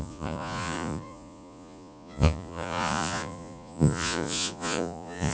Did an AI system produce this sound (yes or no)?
yes